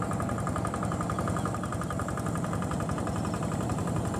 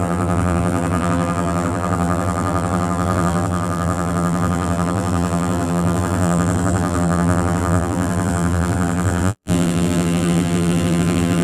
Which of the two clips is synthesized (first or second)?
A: second